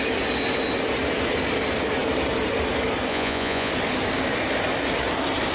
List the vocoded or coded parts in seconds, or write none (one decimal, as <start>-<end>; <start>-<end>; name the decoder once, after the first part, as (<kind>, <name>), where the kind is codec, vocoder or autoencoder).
3.1-3.7 (vocoder, Vocos)

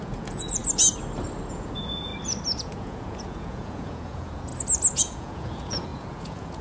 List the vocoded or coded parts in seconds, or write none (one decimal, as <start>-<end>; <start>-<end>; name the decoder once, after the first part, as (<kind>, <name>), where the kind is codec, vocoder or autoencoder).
0.0-0.6 (vocoder, Vocos); 1.5-2.1; 2.6-4.5; 5.0-6.6

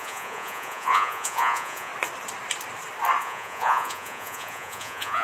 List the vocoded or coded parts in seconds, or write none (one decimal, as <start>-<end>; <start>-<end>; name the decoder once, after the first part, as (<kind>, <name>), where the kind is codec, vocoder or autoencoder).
0.0-1.9 (vocoder, Vocos); 3.2-5.2